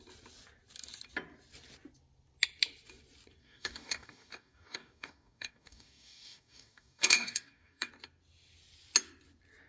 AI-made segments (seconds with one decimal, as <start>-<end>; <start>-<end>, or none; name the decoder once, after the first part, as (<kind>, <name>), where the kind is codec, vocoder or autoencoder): 3.4-7.9 (codec, DAC)